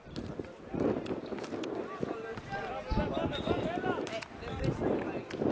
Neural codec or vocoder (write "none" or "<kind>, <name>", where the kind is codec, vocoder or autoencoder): none